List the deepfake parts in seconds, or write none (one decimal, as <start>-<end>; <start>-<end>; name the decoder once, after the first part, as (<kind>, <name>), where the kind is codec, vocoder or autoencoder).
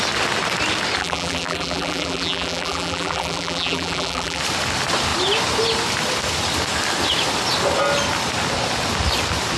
1.0-4.4 (vocoder, BigVGAN v2)